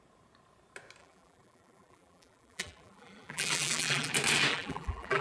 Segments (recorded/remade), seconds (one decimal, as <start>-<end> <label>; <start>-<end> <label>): 0.0-1.0 recorded; 1.0-4.1 remade; 4.1-4.5 recorded; 4.5-5.2 remade